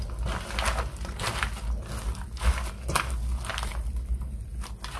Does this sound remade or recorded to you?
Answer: recorded